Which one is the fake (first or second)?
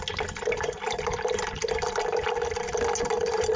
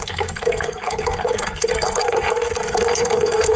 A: second